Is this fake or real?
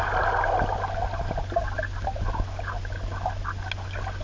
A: real